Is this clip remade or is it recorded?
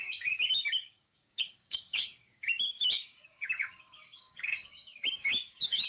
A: remade